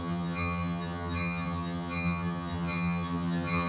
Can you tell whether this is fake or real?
fake